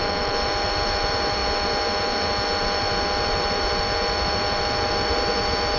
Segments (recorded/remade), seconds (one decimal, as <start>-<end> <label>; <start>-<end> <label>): 0.0-5.8 recorded